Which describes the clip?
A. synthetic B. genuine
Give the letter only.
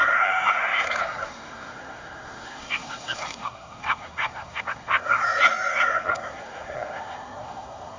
A